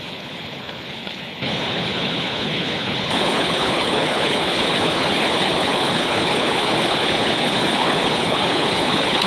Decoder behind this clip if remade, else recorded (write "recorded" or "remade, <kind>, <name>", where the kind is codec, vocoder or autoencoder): remade, codec, HILCodec